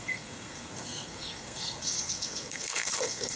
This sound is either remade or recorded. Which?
remade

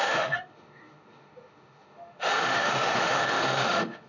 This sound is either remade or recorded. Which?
remade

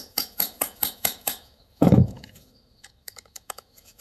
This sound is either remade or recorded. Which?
remade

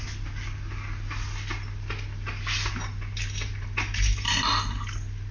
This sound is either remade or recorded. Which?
recorded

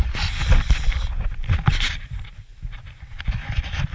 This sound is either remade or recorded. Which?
recorded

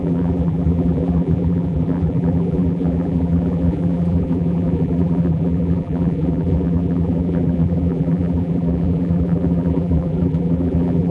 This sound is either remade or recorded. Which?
remade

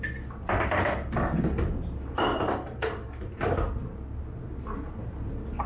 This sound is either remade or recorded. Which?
recorded